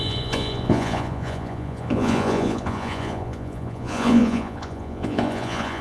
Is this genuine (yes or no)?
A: no